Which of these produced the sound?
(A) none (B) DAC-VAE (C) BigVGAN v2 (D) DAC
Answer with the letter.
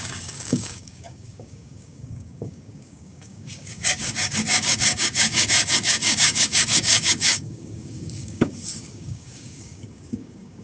D